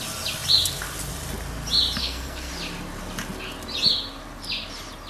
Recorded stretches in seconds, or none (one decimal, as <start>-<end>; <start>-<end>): 0.0-2.0; 2.5-5.1